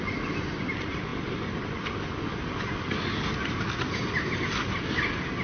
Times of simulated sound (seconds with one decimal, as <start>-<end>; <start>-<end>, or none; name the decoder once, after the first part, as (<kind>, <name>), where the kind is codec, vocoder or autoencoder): none